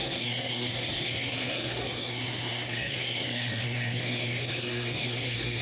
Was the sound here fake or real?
fake